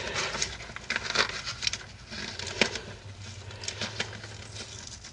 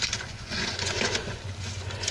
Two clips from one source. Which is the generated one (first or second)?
second